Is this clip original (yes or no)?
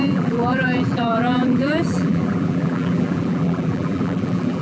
no